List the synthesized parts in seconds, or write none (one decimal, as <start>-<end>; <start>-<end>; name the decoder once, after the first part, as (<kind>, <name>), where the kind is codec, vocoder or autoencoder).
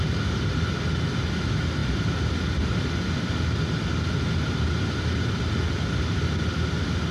none